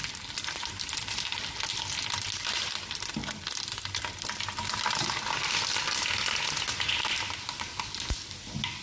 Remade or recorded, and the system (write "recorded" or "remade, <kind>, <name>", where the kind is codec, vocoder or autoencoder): recorded